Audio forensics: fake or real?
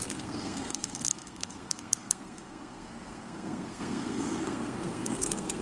fake